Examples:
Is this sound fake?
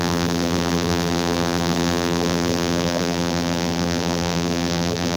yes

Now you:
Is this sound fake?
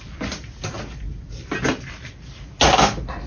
no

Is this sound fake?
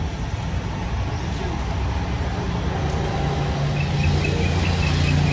no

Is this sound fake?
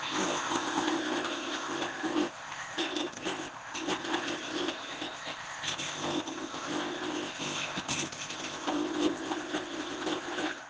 yes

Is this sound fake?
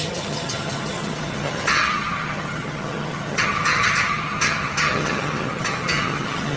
yes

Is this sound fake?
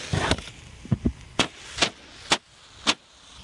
no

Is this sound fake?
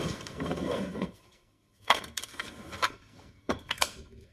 yes